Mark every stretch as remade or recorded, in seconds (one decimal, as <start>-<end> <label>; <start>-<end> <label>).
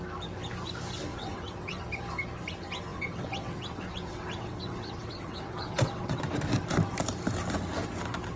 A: 0.0-1.1 recorded; 1.1-1.8 remade; 1.8-2.9 recorded; 2.9-6.2 remade; 6.2-8.4 recorded